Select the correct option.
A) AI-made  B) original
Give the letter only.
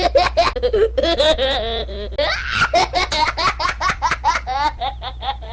B